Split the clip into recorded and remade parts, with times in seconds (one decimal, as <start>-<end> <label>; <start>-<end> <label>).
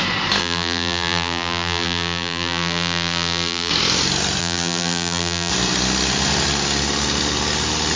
0.0-0.4 recorded; 0.4-3.7 remade; 3.7-4.4 recorded; 4.4-5.5 remade; 5.5-8.0 recorded